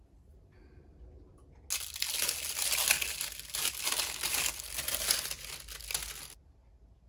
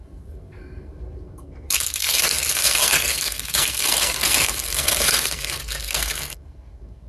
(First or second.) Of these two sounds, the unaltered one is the first